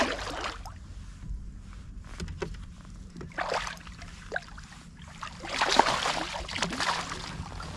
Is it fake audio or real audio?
real